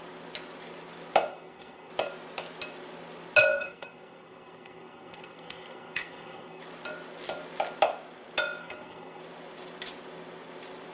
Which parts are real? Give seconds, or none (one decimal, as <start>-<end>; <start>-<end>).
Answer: 0.0-1.3; 1.9-3.5; 6.6-8.6; 9.2-10.9